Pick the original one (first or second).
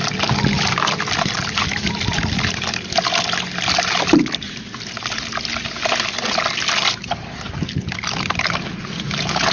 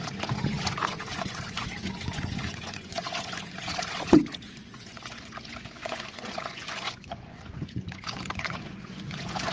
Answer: first